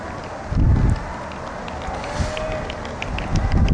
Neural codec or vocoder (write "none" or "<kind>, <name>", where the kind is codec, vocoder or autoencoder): none